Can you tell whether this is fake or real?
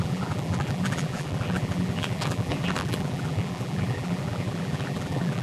fake